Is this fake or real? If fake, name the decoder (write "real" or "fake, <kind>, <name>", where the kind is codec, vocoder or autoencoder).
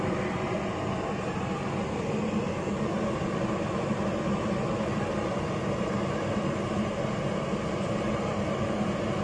real